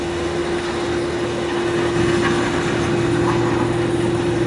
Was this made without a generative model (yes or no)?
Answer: yes